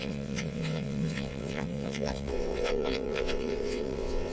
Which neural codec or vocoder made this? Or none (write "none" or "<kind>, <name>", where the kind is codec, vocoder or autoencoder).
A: vocoder, WaveNeXt